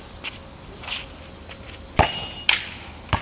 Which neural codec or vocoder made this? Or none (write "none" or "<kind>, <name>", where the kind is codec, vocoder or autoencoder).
none